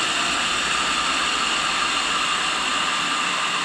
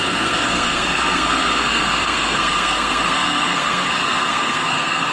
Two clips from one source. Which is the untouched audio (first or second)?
first